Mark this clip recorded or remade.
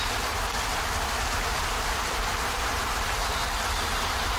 remade